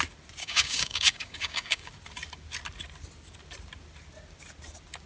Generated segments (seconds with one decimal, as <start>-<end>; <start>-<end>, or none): 0.4-1.9